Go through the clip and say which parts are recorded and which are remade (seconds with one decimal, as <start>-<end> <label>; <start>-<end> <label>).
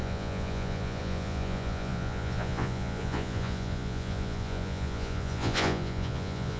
0.0-6.6 remade